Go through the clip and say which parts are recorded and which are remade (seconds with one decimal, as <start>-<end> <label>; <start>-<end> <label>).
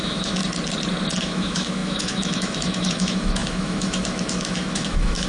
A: 0.0-0.4 remade; 0.4-1.2 recorded; 1.2-5.3 remade